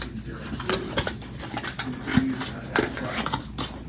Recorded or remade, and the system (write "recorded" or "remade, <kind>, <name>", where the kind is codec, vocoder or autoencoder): recorded